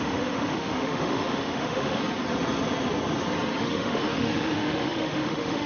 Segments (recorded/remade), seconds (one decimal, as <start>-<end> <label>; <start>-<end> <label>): 0.0-2.0 remade; 2.0-3.6 recorded; 3.6-5.7 remade